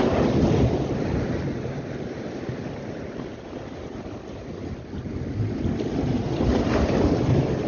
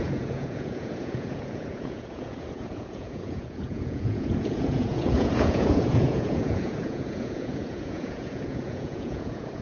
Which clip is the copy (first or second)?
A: second